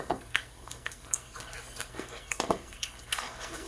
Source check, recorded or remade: remade